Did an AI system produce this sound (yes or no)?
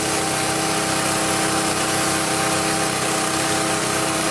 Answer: no